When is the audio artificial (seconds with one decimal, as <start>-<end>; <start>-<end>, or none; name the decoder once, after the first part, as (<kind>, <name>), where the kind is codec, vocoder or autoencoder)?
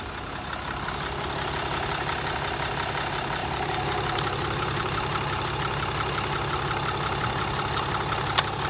3.4-5.5 (vocoder, BigVGAN v2)